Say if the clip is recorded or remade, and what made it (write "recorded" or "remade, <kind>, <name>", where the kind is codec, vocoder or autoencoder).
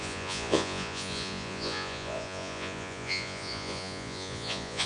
remade, vocoder, Vocos